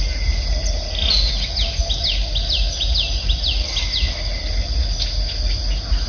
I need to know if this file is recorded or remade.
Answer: recorded